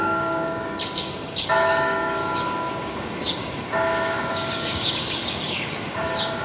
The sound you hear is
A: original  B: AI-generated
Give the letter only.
B